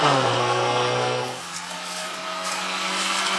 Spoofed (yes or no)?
yes